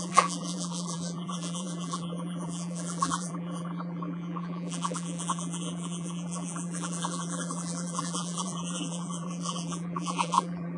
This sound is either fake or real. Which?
fake